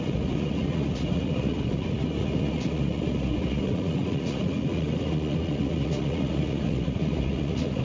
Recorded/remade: remade